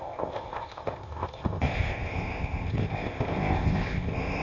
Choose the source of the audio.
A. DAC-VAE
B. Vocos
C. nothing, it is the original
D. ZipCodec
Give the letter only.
D